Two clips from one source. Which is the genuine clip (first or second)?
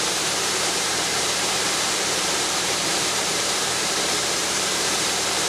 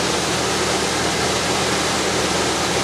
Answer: second